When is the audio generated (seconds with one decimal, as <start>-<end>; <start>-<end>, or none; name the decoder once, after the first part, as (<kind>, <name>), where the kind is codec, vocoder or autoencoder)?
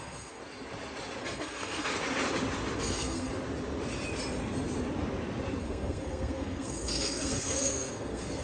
0.0-0.4 (codec, SNAC); 1.2-1.9; 2.8-3.3; 5.6-8.4